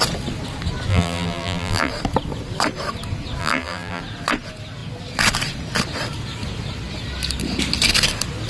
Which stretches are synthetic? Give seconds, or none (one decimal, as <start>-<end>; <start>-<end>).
0.9-1.9; 3.4-4.0